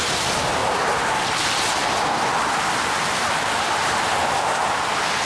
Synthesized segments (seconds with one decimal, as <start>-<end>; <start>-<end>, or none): none